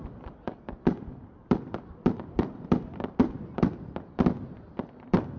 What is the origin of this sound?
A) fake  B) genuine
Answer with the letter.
A